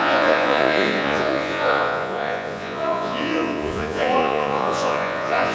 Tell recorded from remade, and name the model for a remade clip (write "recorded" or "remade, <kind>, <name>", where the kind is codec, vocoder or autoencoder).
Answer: remade, vocoder, Vocos